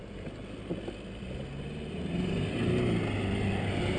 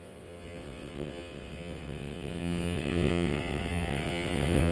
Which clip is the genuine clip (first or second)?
first